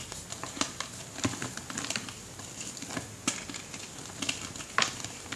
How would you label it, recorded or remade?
recorded